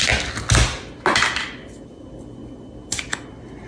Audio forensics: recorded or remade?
recorded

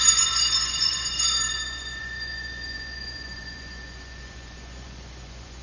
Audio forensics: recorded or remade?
remade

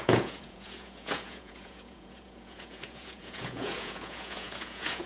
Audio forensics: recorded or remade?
remade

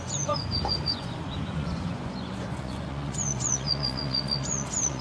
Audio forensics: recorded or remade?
remade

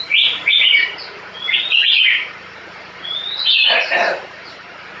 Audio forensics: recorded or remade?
remade